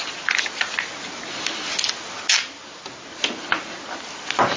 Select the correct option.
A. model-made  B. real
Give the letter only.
B